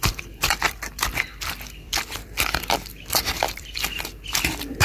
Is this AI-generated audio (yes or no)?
yes